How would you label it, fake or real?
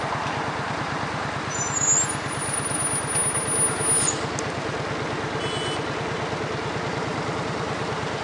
real